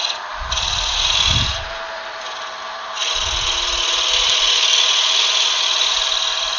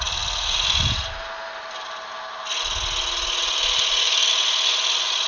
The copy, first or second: first